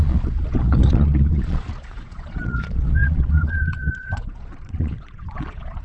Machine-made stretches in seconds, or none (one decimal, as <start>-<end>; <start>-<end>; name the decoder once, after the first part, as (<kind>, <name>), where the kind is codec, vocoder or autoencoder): 0.0-5.8 (vocoder, Vocos)